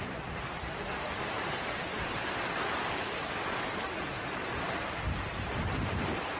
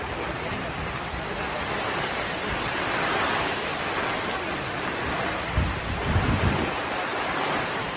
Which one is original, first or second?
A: second